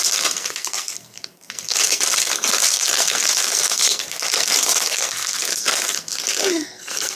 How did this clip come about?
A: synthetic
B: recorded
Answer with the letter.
A